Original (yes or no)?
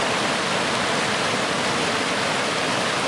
yes